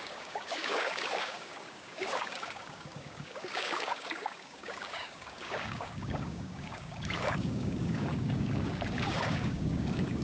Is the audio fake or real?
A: fake